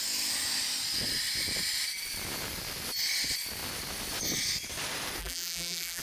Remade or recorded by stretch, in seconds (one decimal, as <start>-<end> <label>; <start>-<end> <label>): 0.0-5.2 recorded; 5.2-6.0 remade